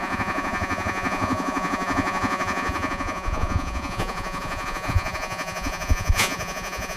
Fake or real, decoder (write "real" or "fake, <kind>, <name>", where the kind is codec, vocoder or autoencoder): fake, vocoder, Vocos